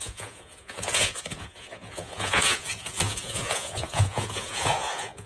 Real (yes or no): no